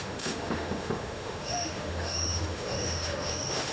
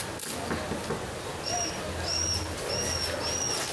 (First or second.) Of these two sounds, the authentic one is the second